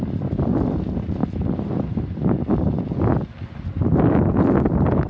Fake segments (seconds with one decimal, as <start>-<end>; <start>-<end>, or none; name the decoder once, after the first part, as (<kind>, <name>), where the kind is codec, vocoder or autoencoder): none

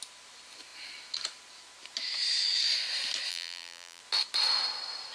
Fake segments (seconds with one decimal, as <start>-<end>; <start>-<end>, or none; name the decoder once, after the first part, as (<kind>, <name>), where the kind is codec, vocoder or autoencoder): 3.3-4.0 (vocoder, BigVGAN v2)